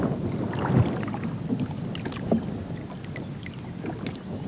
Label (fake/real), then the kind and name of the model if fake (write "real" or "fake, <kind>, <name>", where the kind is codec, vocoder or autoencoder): real